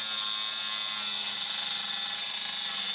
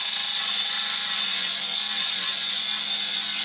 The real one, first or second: first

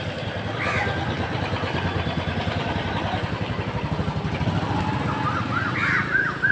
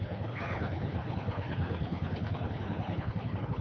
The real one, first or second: first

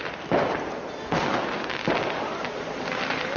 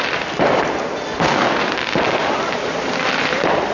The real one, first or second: first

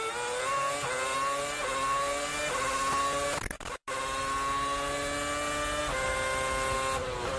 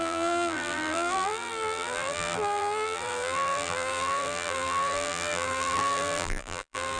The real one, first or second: first